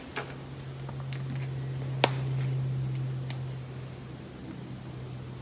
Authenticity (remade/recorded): recorded